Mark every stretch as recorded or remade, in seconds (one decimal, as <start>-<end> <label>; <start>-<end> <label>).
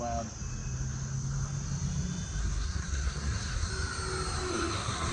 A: 0.0-2.4 recorded; 2.4-3.7 remade; 3.7-4.5 recorded; 4.5-5.1 remade